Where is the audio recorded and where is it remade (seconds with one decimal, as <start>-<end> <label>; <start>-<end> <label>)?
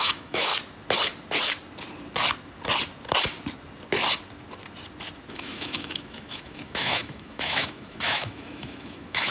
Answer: 0.0-0.5 remade; 0.5-5.3 recorded; 5.3-9.3 remade